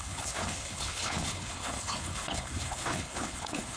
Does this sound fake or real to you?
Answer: fake